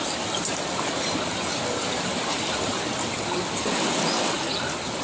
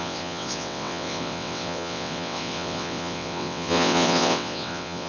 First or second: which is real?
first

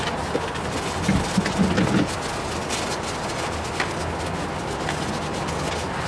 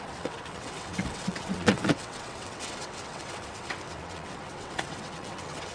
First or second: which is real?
first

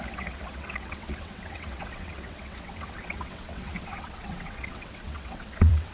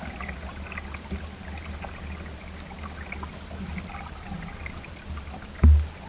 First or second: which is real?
second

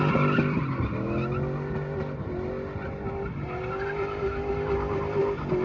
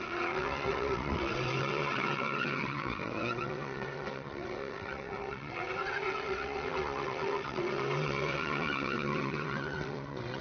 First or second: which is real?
first